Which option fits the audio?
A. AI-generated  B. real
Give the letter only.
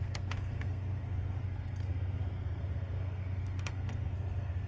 A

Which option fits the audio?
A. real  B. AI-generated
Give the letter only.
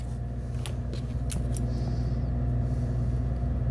A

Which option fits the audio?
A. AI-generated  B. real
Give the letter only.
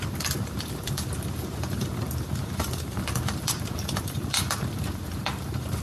A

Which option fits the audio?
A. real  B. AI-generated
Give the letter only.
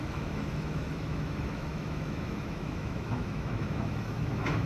B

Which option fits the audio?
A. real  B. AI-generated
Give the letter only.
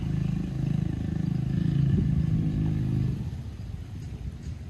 A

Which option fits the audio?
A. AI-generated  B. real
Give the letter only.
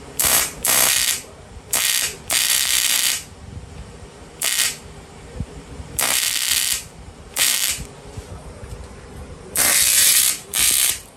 A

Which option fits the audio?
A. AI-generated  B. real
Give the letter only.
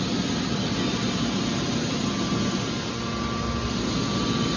B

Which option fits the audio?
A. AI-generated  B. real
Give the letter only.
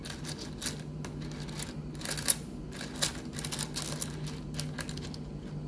B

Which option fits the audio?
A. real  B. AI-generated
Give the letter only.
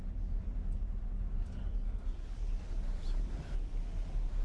A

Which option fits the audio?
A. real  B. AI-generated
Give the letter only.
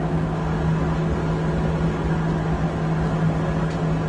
A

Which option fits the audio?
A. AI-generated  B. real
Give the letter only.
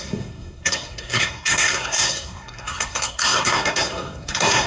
A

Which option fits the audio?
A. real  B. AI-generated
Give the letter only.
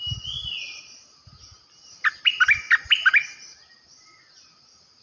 A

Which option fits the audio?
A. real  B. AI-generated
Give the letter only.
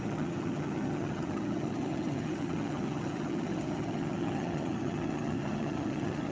B